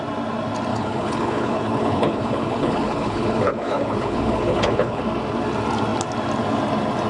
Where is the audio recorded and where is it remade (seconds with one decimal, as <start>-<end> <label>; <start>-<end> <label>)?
0.0-0.7 recorded; 0.7-5.0 remade; 5.0-7.1 recorded